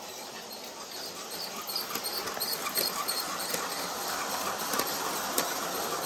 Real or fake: real